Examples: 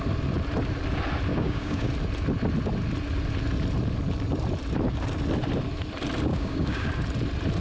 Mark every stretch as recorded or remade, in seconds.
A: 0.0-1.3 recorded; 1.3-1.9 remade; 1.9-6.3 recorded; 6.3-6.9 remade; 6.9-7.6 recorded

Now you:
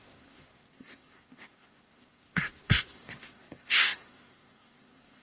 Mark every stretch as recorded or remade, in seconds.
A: 0.0-5.2 remade

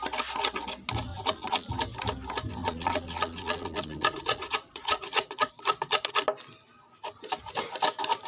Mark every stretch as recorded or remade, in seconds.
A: 0.0-1.1 recorded; 1.1-1.7 remade; 1.7-2.6 recorded; 2.6-6.1 remade; 6.1-8.3 recorded

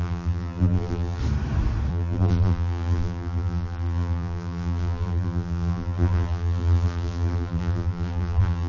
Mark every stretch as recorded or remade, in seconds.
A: 0.0-1.2 remade; 1.2-1.9 recorded; 1.9-8.7 remade

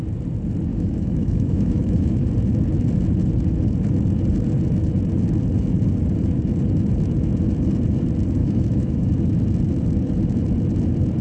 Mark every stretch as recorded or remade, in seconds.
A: 0.0-0.7 recorded; 0.7-2.3 remade; 2.3-8.4 recorded; 8.4-9.1 remade; 9.1-11.2 recorded

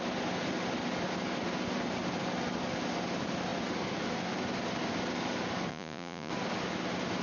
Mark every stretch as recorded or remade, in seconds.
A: 0.0-5.7 recorded; 5.7-6.3 remade; 6.3-7.2 recorded

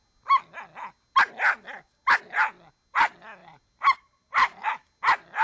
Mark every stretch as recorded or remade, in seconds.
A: 0.0-3.4 recorded; 3.4-4.6 remade; 4.6-5.4 recorded